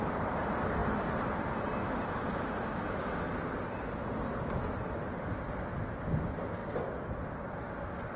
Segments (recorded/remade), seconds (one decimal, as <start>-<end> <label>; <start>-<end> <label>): 0.0-8.2 recorded